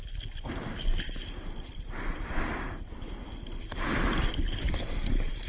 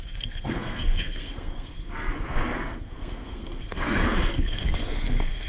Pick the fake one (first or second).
second